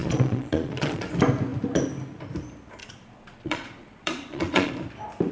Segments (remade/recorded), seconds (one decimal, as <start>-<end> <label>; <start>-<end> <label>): 0.0-1.0 remade; 1.0-2.8 recorded; 2.8-4.7 remade; 4.7-5.3 recorded

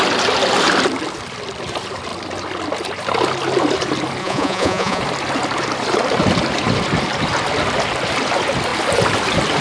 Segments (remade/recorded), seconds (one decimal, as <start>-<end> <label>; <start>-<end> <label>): 0.0-4.2 recorded; 4.2-5.0 remade; 5.0-9.6 recorded